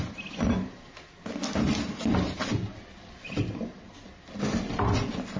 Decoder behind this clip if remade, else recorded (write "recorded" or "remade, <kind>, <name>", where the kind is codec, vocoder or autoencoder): recorded